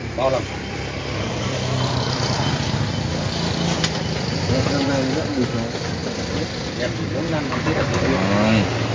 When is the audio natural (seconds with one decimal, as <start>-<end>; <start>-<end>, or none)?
0.0-8.9